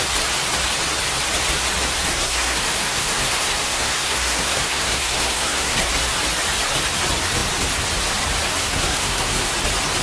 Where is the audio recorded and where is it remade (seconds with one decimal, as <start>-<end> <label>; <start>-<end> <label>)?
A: 0.0-2.1 recorded; 2.1-5.9 remade; 5.9-8.6 recorded; 8.6-9.5 remade; 9.5-10.0 recorded